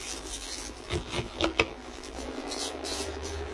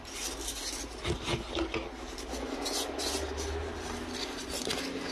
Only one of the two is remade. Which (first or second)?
first